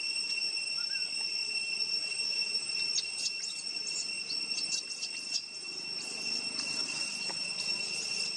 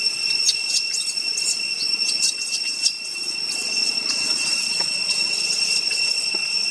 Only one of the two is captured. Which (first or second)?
first